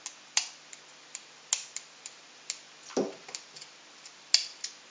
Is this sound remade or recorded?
recorded